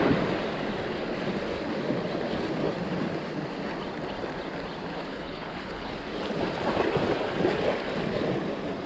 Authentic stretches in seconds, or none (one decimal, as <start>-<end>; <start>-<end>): 0.0-5.1; 5.9-8.9